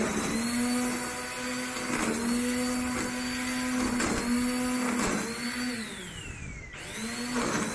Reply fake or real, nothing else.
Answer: real